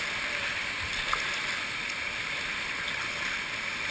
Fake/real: real